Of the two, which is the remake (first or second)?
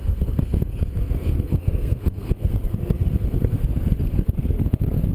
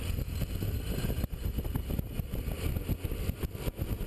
first